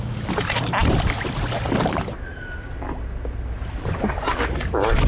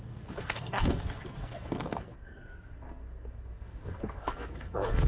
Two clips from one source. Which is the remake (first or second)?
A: second